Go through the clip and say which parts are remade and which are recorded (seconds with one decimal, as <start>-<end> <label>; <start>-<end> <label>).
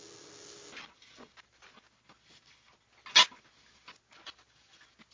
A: 0.0-5.1 recorded